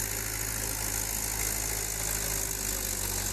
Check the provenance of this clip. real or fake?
real